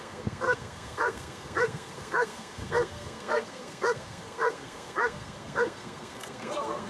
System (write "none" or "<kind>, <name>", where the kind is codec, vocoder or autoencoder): codec, SNAC